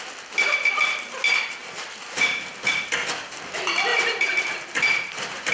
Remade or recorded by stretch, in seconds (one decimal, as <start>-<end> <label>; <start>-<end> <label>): 0.0-1.6 recorded; 1.6-2.9 remade; 2.9-3.9 recorded; 3.9-5.1 remade; 5.1-5.5 recorded